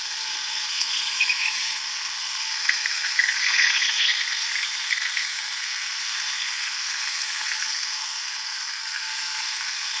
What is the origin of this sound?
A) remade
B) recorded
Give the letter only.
A